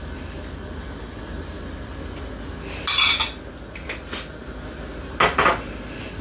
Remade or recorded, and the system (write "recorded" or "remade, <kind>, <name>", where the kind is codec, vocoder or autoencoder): recorded